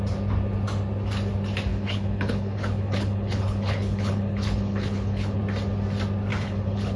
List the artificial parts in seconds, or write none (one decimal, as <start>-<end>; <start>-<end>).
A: 1.7-5.4; 6.3-7.0